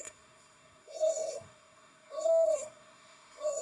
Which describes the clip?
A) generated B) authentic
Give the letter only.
A